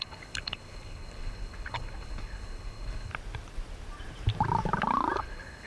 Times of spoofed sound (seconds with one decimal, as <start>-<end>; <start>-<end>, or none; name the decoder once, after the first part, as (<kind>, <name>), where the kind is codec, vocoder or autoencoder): 0.0-3.1 (codec, HILCodec); 5.2-5.7